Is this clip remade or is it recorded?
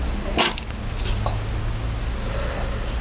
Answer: recorded